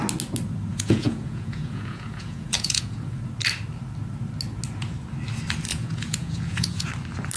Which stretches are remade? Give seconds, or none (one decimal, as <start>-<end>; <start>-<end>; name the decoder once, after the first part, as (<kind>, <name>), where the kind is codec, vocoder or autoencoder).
0.7-3.2 (vocoder, Vocos); 5.7-6.8